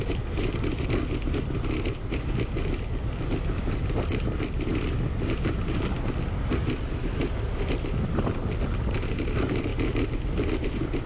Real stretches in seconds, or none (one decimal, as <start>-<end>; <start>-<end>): 0.0-11.1